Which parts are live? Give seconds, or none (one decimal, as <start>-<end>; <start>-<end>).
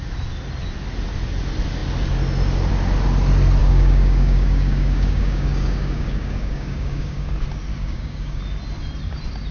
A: 0.0-3.6; 7.3-7.7; 8.4-9.5